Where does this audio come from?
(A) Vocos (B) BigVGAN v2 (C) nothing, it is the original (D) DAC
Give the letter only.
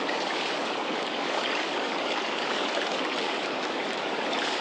D